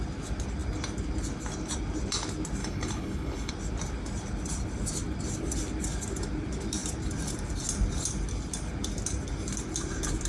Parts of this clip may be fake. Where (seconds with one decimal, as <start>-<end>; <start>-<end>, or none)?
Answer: 2.6-3.5